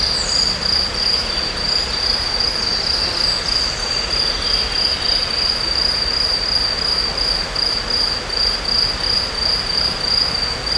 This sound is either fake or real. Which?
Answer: real